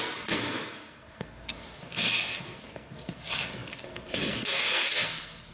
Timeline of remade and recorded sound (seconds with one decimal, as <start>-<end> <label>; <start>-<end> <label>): 0.0-5.5 remade